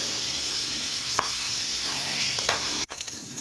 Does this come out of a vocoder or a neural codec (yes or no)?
yes